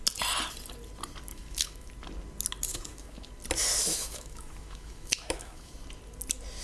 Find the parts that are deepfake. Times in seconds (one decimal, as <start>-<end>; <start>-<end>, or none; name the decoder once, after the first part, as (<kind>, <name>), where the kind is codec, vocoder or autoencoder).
1.3-1.9 (autoencoder, DAC-VAE); 2.7-3.3; 3.8-5.7